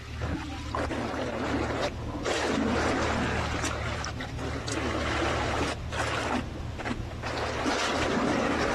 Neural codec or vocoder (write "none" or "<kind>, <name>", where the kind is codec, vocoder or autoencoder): none